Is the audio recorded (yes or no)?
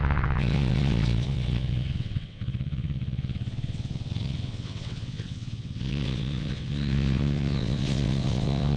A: no